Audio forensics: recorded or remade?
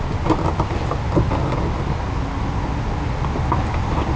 recorded